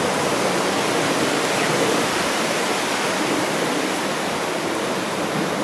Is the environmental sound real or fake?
real